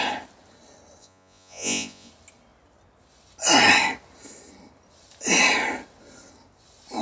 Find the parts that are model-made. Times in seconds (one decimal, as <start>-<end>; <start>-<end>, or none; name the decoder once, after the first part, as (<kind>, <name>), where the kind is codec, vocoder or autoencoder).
1.0-2.1 (vocoder, Vocos)